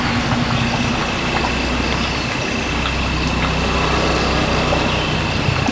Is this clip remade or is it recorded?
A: recorded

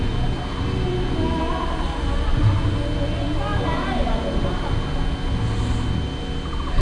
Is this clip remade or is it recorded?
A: recorded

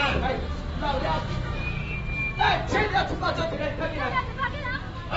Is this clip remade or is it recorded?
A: recorded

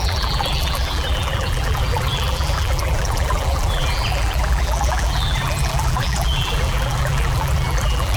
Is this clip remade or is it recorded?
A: remade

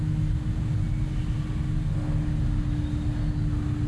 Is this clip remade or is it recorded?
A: recorded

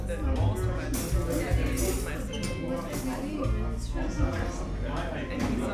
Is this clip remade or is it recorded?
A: recorded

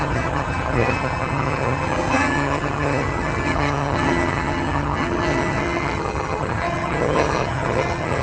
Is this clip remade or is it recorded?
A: remade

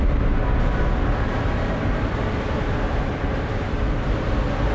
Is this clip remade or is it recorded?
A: recorded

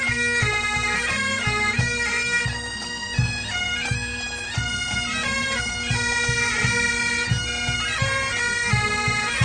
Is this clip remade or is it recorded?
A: recorded